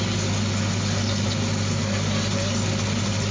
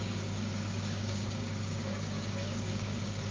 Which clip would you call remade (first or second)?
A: second